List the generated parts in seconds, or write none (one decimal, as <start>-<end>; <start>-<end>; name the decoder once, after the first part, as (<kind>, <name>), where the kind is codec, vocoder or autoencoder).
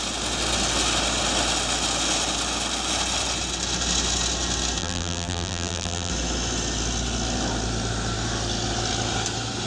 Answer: 4.8-6.1 (vocoder, BigVGAN v2)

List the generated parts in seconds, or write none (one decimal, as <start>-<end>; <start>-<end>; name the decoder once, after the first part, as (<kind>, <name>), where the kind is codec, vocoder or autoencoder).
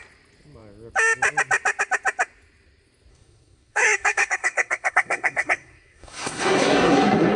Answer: 3.1-7.4 (codec, SNAC)